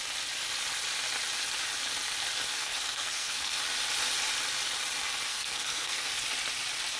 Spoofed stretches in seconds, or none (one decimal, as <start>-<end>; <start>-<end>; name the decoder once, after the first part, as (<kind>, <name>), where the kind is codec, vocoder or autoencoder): 2.5-3.6 (codec, SNAC); 5.3-6.1